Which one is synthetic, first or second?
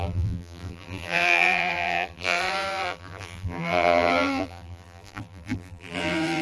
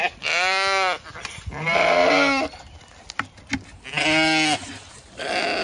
first